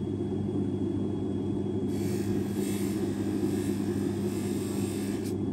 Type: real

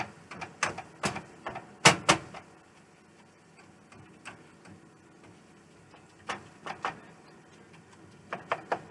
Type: real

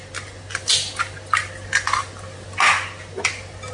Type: real